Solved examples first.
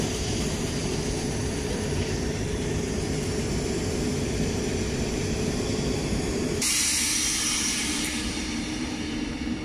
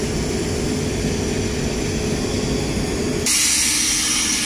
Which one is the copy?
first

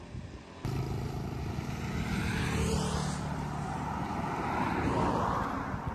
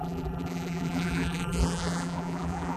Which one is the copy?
second